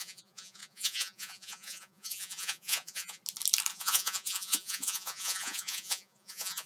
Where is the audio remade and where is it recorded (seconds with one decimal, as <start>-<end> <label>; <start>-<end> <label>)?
0.0-3.2 remade; 3.2-3.7 recorded; 3.7-6.7 remade